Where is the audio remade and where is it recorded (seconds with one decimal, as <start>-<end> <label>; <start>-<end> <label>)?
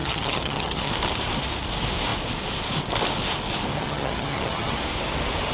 0.0-0.9 remade; 0.9-3.7 recorded; 3.7-4.8 remade; 4.8-5.5 recorded